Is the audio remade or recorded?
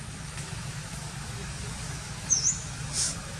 remade